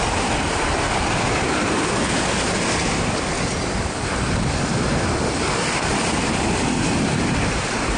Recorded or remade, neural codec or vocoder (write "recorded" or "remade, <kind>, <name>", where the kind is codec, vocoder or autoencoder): recorded